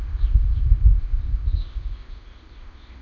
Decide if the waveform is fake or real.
fake